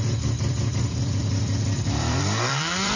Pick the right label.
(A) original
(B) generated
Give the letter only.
B